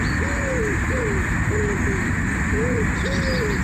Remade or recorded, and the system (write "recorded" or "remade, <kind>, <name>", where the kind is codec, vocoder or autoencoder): remade, vocoder, BigVGAN v2